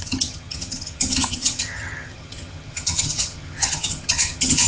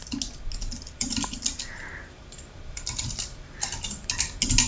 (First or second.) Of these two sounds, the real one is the second